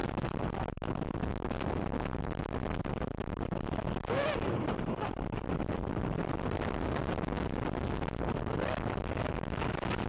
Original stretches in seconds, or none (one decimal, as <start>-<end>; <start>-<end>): 0.0-10.1